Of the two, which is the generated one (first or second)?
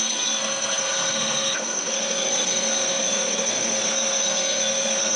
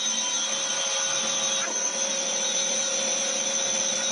first